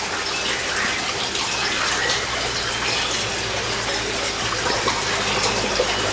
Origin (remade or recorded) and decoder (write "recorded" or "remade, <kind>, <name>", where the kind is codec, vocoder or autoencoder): recorded